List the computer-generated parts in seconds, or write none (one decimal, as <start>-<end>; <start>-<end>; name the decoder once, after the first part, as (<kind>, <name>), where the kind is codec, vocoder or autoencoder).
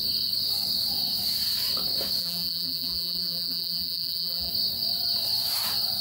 2.2-4.5 (vocoder, BigVGAN v2)